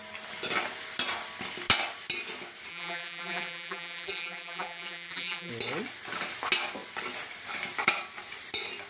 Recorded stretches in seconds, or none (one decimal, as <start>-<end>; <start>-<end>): 0.0-2.7; 5.5-8.9